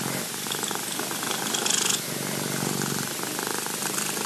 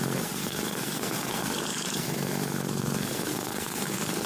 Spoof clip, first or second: second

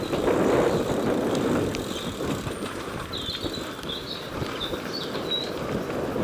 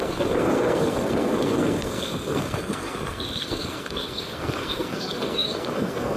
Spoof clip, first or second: second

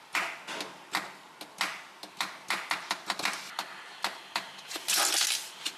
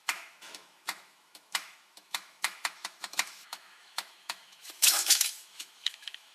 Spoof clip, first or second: second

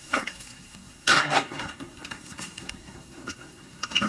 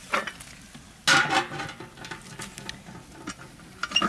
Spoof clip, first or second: first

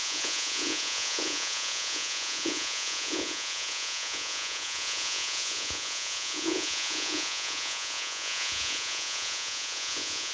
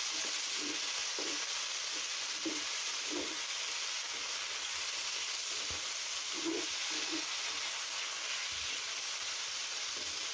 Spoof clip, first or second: first